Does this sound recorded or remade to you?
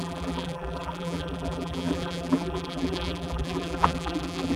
remade